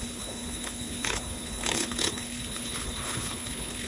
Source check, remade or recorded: remade